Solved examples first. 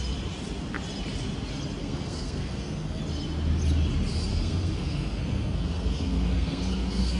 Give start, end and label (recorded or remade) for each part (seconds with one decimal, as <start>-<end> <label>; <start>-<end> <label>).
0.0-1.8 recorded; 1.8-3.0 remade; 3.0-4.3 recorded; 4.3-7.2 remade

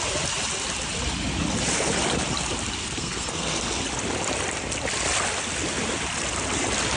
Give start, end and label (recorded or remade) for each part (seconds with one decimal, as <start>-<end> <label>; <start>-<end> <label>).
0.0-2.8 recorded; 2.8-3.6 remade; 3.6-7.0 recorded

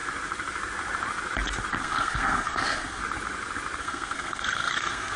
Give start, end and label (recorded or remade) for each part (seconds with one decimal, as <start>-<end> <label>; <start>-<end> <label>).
0.0-1.8 recorded; 1.8-3.0 remade; 3.0-3.8 recorded; 3.8-5.2 remade